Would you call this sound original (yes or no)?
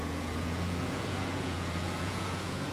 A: no